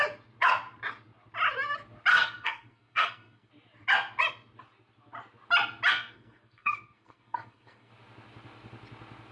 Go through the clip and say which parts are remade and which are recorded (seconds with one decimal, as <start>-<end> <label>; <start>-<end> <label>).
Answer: 0.0-2.1 recorded; 2.1-3.5 remade; 3.5-5.9 recorded; 5.9-7.9 remade; 7.9-9.3 recorded

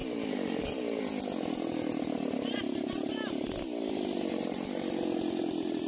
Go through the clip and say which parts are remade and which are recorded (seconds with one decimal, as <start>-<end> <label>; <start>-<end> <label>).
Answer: 0.0-5.9 recorded